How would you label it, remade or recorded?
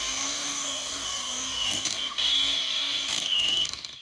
remade